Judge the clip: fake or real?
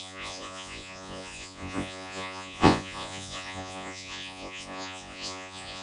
fake